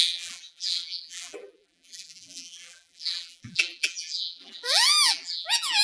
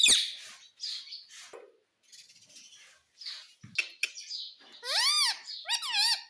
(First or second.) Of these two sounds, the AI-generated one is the first